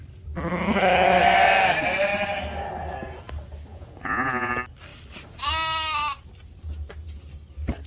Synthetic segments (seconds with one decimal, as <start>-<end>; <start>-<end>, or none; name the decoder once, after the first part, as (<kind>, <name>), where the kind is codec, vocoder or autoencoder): 3.7-4.5 (vocoder, Vocos)